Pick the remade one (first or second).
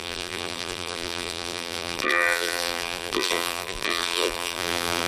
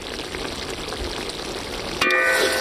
first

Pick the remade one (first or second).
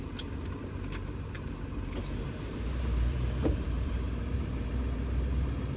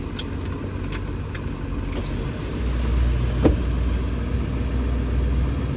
first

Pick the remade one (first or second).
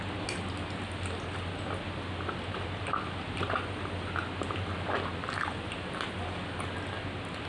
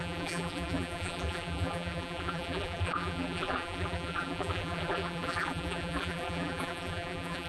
second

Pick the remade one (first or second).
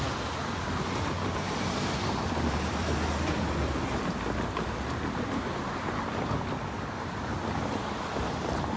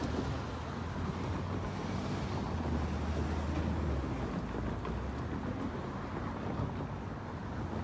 first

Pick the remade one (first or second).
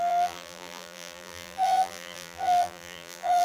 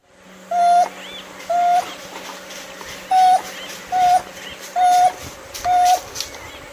first